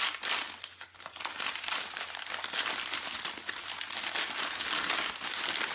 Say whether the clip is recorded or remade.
recorded